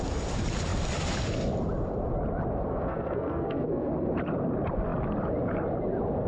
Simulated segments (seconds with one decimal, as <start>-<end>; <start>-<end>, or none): 2.7-3.9